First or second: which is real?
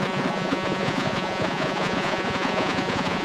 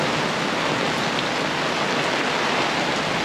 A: second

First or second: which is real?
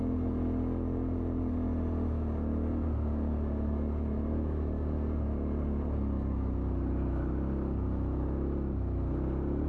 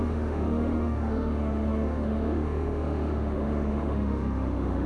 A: first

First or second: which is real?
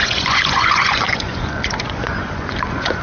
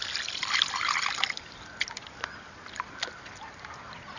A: second